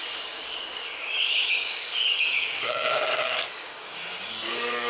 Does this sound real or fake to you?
fake